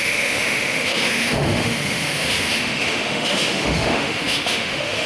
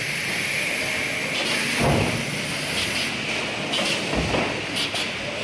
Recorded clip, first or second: second